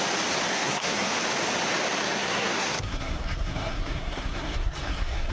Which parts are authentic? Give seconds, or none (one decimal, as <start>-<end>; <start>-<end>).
0.0-0.5; 1.1-2.0